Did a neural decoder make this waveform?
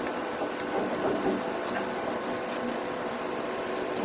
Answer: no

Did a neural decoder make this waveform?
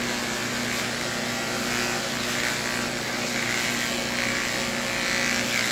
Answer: no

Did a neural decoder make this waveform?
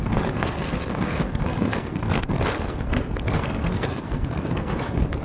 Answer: yes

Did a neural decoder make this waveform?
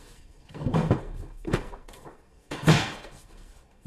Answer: yes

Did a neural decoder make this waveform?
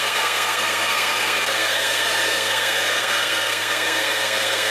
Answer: yes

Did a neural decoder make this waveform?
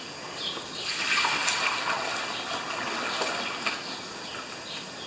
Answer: no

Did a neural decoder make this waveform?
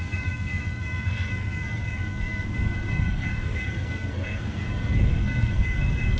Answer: yes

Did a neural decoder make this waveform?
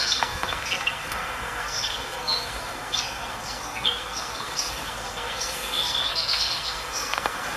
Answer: yes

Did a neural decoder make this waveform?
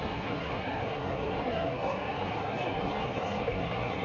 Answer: yes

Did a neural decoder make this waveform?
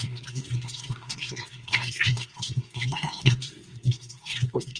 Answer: yes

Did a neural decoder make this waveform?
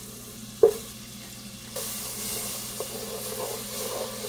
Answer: no